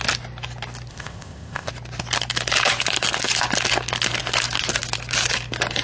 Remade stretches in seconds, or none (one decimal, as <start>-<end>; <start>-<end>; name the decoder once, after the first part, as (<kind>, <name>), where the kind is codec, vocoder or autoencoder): 0.9-1.7 (codec, ZipCodec)